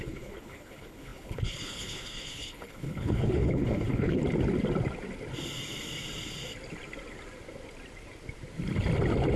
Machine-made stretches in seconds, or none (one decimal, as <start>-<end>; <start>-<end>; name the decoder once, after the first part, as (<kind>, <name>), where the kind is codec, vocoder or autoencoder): 0.0-4.2 (codec, HILCodec)